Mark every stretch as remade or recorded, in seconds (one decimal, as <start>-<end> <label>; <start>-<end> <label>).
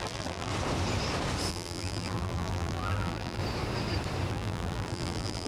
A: 0.0-0.5 remade; 0.5-1.5 recorded; 1.5-3.4 remade; 3.4-4.3 recorded; 4.3-5.5 remade